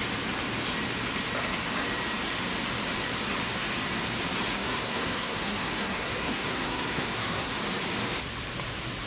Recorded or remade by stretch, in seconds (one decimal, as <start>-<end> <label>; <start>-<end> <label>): 0.0-4.5 recorded; 4.5-7.5 remade; 7.5-9.1 recorded